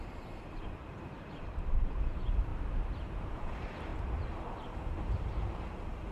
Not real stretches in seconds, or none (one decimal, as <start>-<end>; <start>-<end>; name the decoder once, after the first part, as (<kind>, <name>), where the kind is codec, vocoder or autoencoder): 0.0-2.5 (vocoder, BigVGAN v2); 3.3-6.1

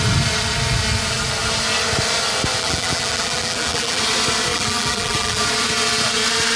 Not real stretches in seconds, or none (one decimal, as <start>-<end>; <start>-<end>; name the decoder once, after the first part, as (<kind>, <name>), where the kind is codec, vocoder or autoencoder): 2.6-4.0 (vocoder, BigVGAN v2); 4.5-5.4